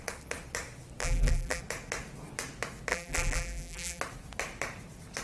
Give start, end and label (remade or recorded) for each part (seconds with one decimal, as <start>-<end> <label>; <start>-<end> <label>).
0.0-1.0 recorded; 1.0-1.6 remade; 1.6-2.9 recorded; 2.9-4.0 remade; 4.0-5.2 recorded